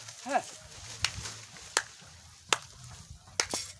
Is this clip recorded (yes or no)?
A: yes